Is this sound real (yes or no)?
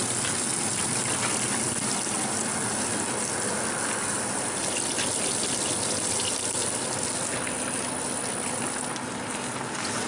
yes